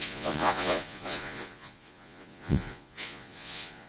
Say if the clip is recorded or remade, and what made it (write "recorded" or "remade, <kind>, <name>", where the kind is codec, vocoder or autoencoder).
remade, vocoder, Vocos